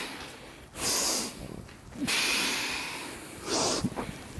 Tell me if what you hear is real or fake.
real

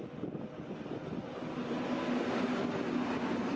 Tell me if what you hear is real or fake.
real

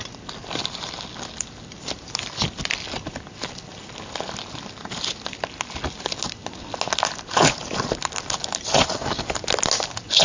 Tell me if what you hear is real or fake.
real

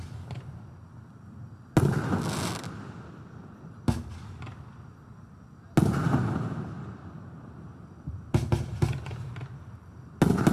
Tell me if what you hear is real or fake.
real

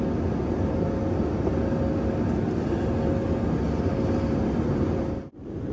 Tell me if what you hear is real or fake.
real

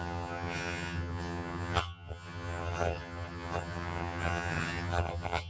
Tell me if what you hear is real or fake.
fake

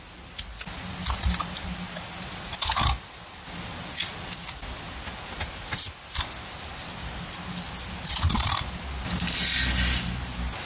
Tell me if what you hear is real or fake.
real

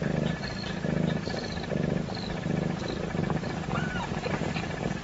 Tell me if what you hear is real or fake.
real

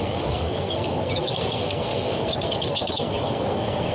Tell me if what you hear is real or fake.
fake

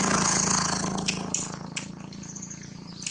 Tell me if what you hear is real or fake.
real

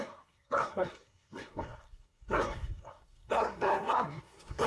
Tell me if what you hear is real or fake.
fake